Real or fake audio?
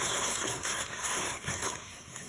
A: fake